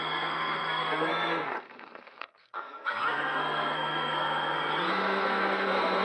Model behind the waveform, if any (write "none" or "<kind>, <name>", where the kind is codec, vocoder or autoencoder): codec, SNAC